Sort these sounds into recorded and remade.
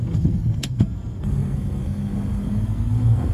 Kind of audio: remade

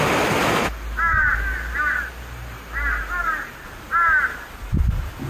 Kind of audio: recorded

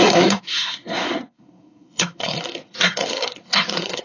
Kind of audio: remade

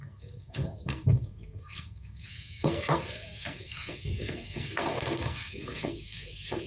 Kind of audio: remade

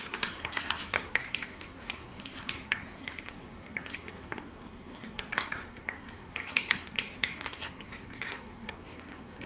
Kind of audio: remade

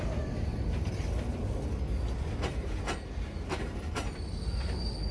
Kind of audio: recorded